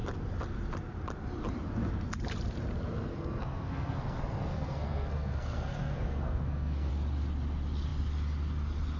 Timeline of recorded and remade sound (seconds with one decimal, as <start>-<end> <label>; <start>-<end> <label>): 0.0-3.1 recorded; 3.1-6.9 remade; 6.9-9.0 recorded

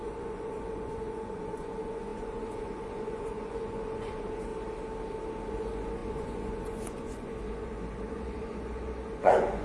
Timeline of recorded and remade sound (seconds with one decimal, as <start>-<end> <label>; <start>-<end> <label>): 0.0-4.5 remade; 4.5-5.5 recorded; 5.5-9.6 remade

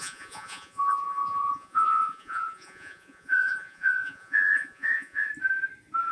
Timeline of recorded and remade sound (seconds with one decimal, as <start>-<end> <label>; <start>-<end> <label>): 0.0-5.3 remade; 5.3-6.1 recorded

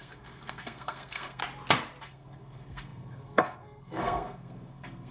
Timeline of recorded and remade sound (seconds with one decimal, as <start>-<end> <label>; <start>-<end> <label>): 0.0-1.4 remade; 1.4-2.0 recorded; 2.0-5.1 remade

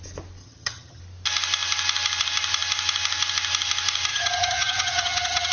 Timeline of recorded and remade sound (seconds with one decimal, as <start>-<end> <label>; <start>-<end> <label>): 0.0-0.4 recorded; 0.4-1.0 remade; 1.0-4.1 recorded; 4.1-5.5 remade

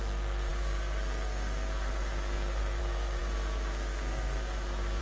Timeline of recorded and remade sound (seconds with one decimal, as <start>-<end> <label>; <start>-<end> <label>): 0.0-5.0 remade